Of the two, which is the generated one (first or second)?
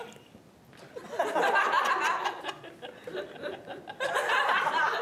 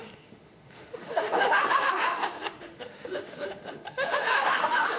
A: second